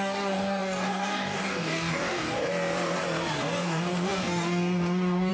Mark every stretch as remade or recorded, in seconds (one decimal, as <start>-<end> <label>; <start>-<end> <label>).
0.0-2.5 remade; 2.5-3.4 recorded; 3.4-5.3 remade